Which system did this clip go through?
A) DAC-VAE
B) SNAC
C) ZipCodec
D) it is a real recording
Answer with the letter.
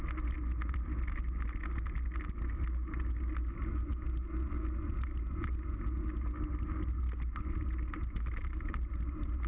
D